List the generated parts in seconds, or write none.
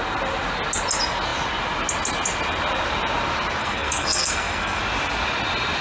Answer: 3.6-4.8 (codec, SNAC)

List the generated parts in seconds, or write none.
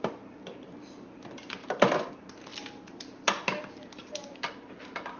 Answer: none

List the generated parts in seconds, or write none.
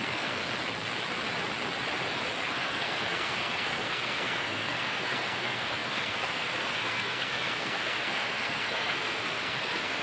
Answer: 0.0-0.4 (codec, SNAC); 2.5-10.0